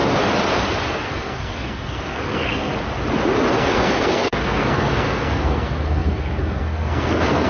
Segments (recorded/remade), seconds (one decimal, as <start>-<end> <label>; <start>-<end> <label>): 0.0-0.9 recorded; 0.9-2.7 remade; 2.7-3.5 recorded; 3.5-7.5 remade